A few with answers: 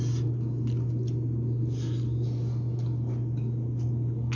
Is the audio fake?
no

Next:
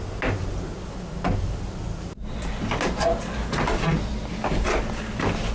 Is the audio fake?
no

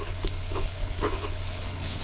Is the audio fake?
yes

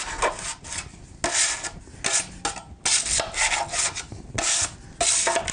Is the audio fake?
no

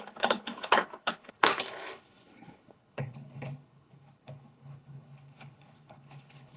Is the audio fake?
yes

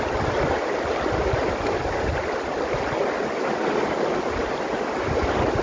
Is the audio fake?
no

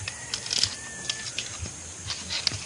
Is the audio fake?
no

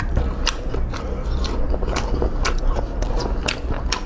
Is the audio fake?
no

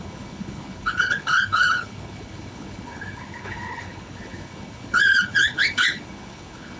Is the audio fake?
yes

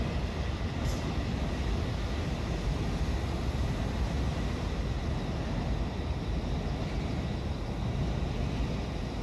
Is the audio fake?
no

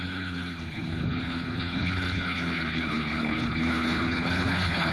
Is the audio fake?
yes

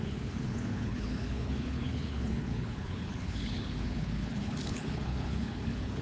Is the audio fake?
yes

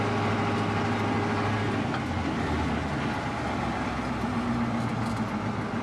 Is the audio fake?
no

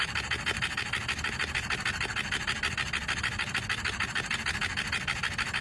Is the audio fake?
no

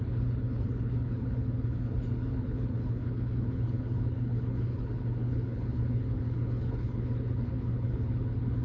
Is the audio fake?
yes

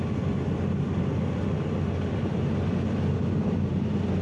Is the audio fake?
no